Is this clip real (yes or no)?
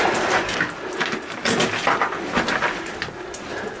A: no